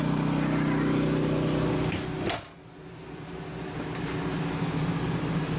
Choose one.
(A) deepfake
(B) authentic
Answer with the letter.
B